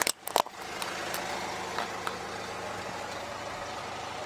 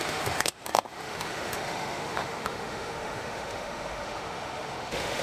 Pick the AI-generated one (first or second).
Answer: second